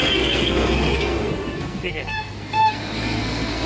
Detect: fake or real fake